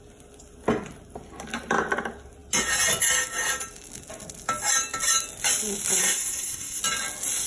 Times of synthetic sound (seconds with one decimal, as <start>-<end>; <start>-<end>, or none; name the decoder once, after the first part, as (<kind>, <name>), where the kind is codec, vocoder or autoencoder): 6.0-6.8 (codec, SNAC)